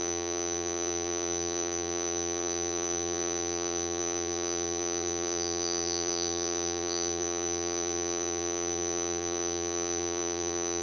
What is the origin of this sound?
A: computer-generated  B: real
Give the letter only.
A